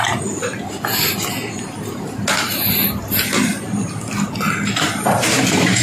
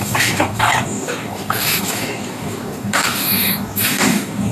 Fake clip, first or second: second